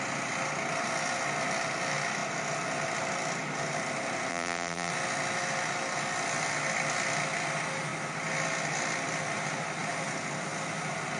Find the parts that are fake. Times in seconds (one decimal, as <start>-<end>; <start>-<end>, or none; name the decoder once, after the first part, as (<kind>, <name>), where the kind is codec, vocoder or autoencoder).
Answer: 4.3-4.9 (vocoder, BigVGAN v2)